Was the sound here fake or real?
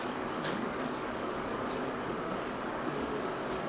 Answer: fake